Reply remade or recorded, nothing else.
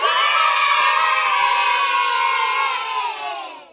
recorded